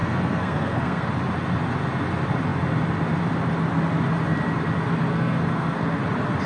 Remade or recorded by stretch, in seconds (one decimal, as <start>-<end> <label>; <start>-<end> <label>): 0.0-1.1 remade; 1.1-5.1 recorded; 5.1-6.0 remade; 6.0-6.5 recorded